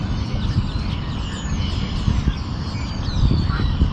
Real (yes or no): yes